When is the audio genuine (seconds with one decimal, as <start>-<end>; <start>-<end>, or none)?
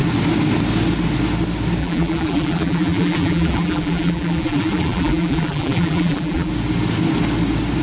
0.0-1.8; 6.5-7.8